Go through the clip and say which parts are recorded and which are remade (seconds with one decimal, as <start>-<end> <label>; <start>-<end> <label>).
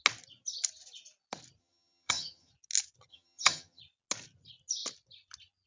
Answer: 0.0-1.6 recorded; 1.6-2.5 remade; 2.5-3.1 recorded; 3.1-3.8 remade; 3.8-5.7 recorded